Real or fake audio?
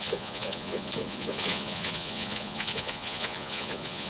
fake